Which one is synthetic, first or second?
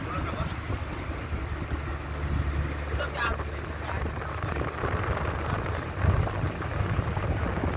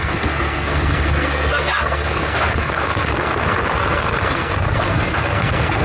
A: second